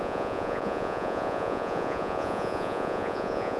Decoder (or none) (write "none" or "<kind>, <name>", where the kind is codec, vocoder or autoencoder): vocoder, Vocos